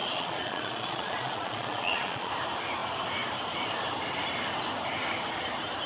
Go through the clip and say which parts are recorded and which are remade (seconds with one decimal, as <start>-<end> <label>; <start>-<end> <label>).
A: 0.0-2.3 remade; 2.3-5.9 recorded